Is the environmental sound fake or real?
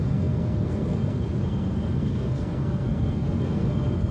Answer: fake